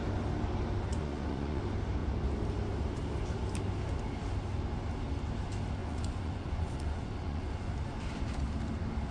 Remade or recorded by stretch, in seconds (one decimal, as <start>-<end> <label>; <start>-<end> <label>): 0.0-0.9 recorded; 0.9-1.6 remade; 1.6-5.8 recorded; 5.8-7.5 remade; 7.5-9.1 recorded